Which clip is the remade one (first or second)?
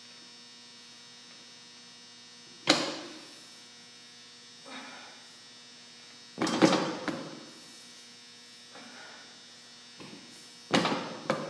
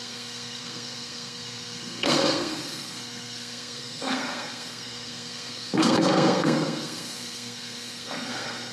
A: second